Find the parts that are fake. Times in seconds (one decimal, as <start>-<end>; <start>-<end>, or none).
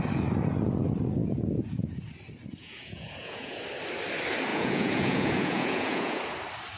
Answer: 1.2-2.1; 2.6-3.6; 4.5-6.2